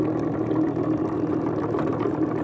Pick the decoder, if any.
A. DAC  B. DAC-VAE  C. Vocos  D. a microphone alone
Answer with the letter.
D